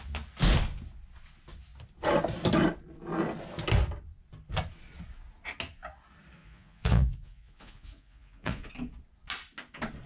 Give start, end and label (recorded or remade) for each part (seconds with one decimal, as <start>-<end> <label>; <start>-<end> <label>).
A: 0.0-6.4 recorded; 6.4-8.7 remade; 8.7-10.1 recorded